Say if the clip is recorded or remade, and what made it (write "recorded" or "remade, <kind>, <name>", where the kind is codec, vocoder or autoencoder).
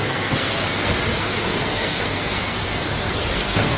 remade, codec, SNAC